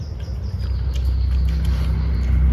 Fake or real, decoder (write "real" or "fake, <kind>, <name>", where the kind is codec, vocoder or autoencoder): real